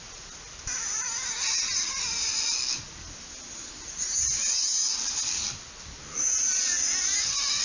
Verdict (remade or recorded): recorded